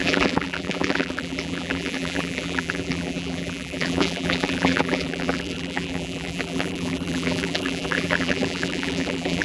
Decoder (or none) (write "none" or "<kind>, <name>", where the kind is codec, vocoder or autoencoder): vocoder, BigVGAN v2